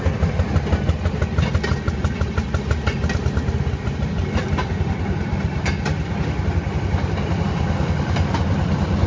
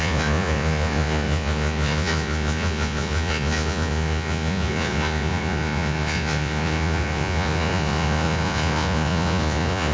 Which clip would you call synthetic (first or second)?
second